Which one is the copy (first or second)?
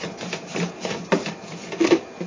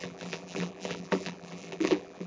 second